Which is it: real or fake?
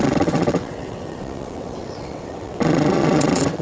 fake